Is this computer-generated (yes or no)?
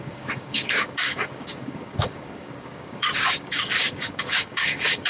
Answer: yes